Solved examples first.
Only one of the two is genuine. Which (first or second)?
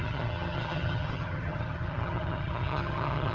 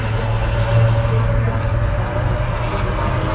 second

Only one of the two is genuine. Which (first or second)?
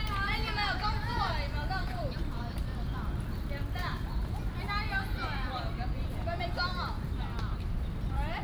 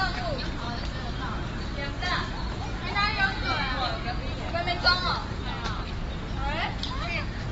second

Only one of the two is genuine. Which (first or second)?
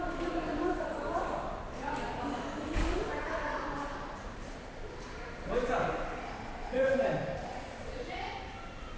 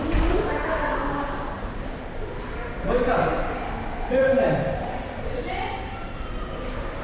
second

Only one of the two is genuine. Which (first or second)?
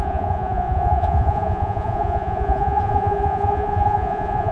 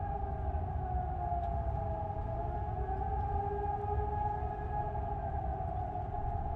second